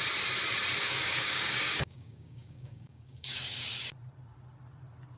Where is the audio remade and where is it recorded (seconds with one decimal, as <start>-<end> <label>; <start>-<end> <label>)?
0.0-0.8 recorded; 0.8-3.8 remade; 3.8-5.2 recorded